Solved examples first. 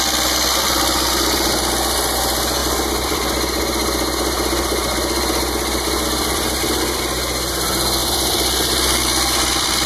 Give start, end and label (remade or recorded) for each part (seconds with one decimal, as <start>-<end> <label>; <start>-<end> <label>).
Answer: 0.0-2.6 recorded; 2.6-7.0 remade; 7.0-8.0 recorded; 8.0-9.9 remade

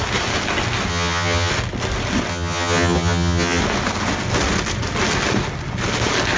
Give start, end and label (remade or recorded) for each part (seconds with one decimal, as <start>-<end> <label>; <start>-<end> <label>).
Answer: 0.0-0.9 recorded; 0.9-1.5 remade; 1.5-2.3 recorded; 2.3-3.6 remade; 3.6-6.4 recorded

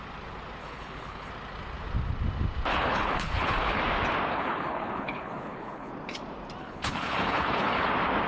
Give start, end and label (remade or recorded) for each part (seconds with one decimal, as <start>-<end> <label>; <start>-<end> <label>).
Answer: 0.0-0.6 recorded; 0.6-1.3 remade; 1.3-2.7 recorded; 2.7-3.8 remade; 3.8-4.3 recorded; 4.3-5.9 remade; 5.9-6.6 recorded; 6.6-7.9 remade; 7.9-8.3 recorded

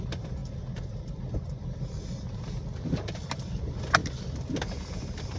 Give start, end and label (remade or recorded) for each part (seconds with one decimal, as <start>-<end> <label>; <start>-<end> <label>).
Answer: 0.0-5.4 recorded

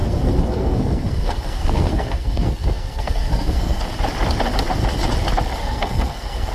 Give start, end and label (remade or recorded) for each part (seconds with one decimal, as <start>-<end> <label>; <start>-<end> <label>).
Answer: 0.0-3.8 remade; 3.8-5.6 recorded; 5.6-6.5 remade

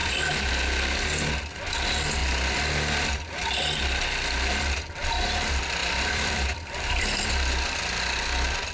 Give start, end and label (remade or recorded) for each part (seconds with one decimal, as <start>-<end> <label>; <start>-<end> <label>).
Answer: 0.0-0.5 remade; 0.5-5.8 recorded; 5.8-7.3 remade; 7.3-8.7 recorded

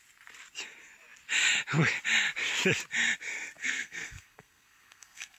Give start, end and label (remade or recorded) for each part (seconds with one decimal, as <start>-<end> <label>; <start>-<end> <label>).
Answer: 0.0-3.6 recorded; 3.6-5.4 remade